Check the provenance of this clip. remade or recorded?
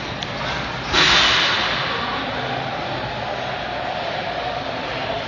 recorded